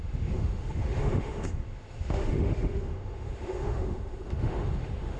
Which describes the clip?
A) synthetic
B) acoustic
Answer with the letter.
A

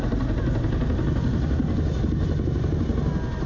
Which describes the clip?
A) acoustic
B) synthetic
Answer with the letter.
A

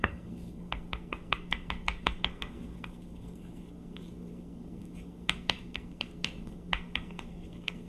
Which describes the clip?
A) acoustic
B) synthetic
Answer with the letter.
B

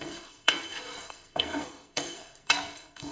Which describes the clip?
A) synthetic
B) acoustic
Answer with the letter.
A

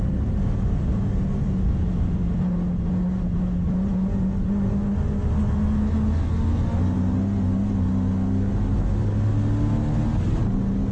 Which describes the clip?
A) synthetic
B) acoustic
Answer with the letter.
B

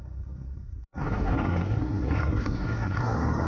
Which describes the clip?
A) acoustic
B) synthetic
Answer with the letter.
B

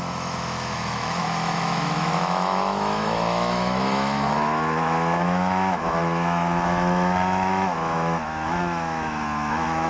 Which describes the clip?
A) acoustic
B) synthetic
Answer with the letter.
B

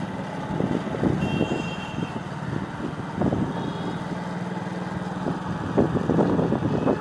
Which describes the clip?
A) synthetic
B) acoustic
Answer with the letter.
B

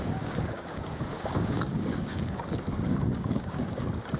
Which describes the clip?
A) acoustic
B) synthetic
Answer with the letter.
B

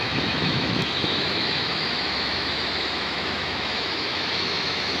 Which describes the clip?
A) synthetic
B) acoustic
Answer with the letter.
A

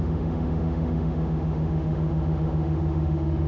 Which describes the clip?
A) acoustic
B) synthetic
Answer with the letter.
B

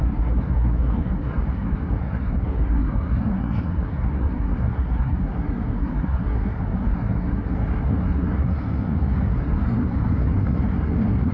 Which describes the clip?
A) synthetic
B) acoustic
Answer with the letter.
A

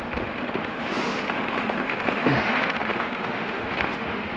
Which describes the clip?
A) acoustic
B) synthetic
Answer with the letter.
B